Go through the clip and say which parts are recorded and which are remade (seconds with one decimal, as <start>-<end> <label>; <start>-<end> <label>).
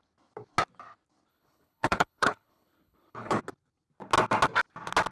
0.0-1.3 recorded; 1.3-3.4 remade; 3.4-5.1 recorded